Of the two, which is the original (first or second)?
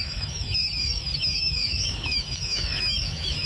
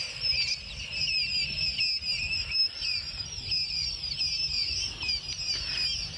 second